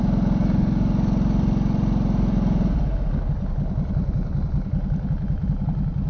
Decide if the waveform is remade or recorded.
recorded